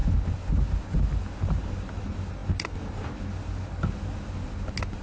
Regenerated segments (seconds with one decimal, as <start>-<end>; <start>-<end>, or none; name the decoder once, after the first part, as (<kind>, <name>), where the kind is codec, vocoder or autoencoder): none